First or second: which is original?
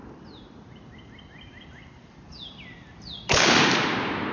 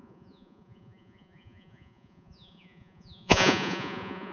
first